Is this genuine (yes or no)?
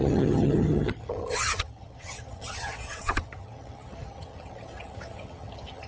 no